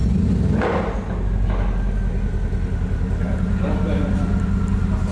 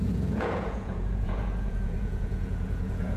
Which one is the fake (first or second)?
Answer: second